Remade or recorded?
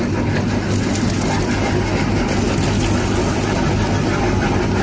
recorded